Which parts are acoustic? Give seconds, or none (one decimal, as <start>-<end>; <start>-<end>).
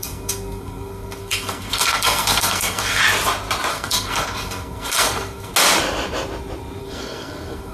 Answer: 3.0-3.7; 5.5-6.8